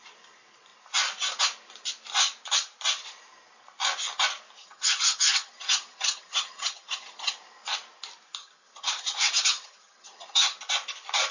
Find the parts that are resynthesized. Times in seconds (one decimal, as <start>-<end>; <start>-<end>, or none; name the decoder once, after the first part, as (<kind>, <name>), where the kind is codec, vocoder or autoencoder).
4.6-7.3 (vocoder, HiFi-GAN); 8.4-10.6